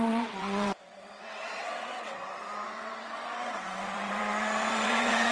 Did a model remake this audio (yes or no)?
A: yes